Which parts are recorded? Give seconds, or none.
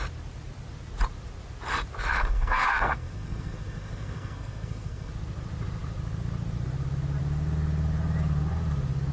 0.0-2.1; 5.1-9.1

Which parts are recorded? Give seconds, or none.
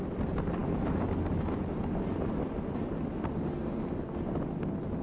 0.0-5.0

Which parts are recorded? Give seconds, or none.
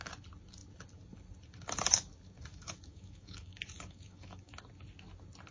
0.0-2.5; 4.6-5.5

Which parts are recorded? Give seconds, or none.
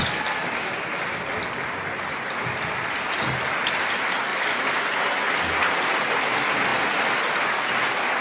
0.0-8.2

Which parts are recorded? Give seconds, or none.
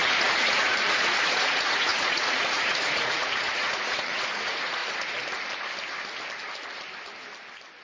4.8-7.8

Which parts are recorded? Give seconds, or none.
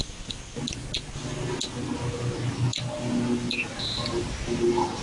0.0-5.0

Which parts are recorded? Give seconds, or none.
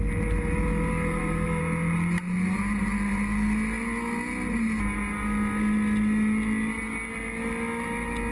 0.0-0.9; 1.6-8.3